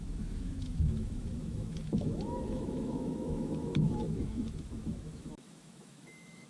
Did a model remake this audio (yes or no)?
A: yes